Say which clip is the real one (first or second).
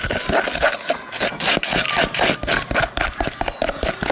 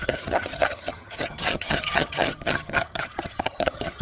first